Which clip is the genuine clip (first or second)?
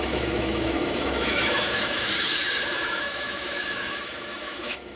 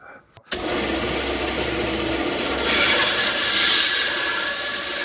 second